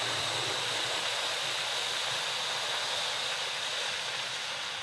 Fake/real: real